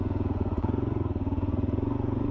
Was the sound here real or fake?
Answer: fake